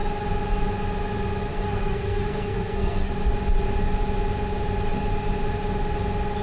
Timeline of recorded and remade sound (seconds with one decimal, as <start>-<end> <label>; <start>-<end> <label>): 0.0-1.5 recorded; 1.5-3.1 remade; 3.1-6.4 recorded